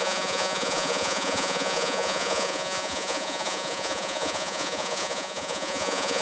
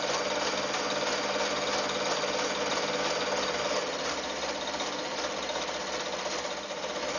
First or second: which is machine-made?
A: first